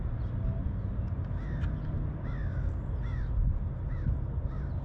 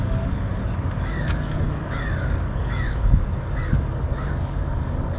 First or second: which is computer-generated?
second